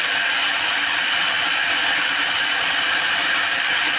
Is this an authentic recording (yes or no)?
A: yes